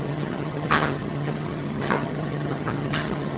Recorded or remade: remade